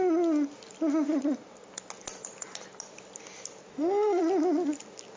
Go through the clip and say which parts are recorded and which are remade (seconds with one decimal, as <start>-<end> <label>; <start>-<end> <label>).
0.0-3.7 recorded; 3.7-4.2 remade; 4.2-5.2 recorded